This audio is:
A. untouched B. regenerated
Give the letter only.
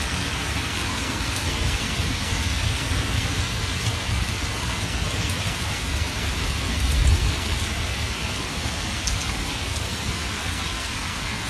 B